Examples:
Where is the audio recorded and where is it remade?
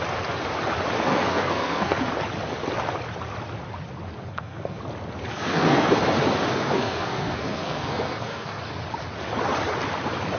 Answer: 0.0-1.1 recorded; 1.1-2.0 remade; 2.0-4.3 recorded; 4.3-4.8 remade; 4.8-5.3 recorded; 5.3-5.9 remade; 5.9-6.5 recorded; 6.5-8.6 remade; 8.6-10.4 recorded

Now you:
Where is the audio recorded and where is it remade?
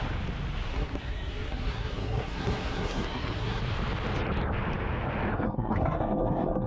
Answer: 0.0-0.7 recorded; 0.7-3.6 remade; 3.6-5.3 recorded; 5.3-6.7 remade